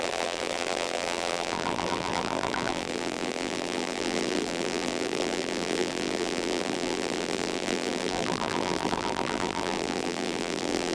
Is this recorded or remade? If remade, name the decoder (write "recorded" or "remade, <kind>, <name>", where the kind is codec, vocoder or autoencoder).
remade, vocoder, BigVGAN v2